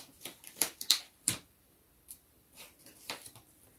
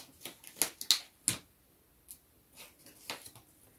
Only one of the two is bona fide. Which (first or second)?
second